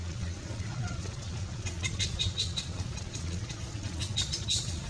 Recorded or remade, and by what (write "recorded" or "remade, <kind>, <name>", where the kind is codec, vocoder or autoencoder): remade, vocoder, Vocos